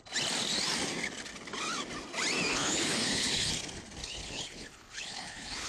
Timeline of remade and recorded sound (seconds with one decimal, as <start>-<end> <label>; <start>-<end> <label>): 0.0-2.5 recorded; 2.5-3.5 remade; 3.5-4.0 recorded; 4.0-5.7 remade

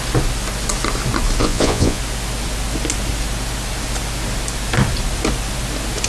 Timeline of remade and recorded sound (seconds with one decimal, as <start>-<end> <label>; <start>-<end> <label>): 0.0-1.4 recorded; 1.4-2.0 remade; 2.0-6.1 recorded

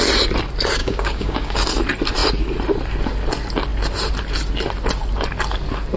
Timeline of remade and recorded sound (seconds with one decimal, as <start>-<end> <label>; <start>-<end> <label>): 0.0-0.8 recorded; 0.8-1.6 remade; 1.6-6.0 recorded

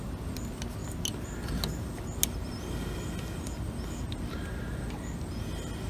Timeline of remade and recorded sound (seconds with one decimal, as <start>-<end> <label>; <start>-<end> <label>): 0.0-5.9 recorded

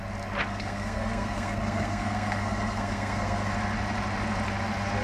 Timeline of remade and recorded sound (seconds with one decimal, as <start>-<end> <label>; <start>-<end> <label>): 0.0-0.5 recorded; 0.5-3.5 remade; 3.5-5.0 recorded

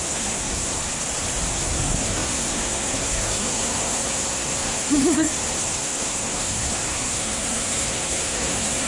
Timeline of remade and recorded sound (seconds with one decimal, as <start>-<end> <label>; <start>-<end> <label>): 0.0-0.8 remade; 0.8-1.5 recorded; 1.5-8.9 remade